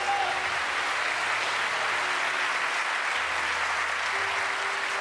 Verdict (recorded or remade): recorded